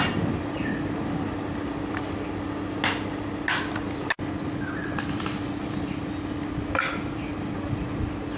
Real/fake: real